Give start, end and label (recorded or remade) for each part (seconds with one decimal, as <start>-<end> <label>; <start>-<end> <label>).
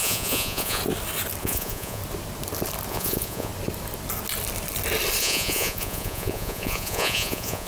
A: 0.0-0.8 remade; 0.8-1.4 recorded; 1.4-2.0 remade; 2.0-2.9 recorded; 2.9-3.5 remade; 3.5-5.2 recorded; 5.2-7.7 remade